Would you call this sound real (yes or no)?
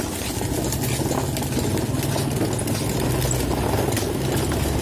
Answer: yes